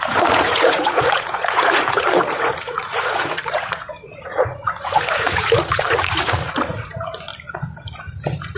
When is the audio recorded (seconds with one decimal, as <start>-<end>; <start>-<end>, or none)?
7.3-8.6